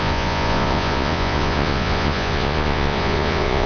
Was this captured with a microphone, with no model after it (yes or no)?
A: no